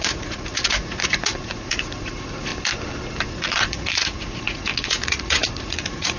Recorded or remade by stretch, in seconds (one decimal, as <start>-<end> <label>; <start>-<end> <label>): 0.0-2.5 remade; 2.5-3.3 recorded; 3.3-6.2 remade